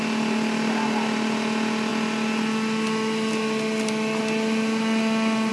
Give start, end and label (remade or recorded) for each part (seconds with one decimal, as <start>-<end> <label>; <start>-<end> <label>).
0.0-5.5 recorded